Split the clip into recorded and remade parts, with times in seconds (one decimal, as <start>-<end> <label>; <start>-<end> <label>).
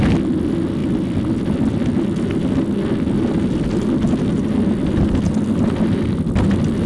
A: 0.0-6.9 recorded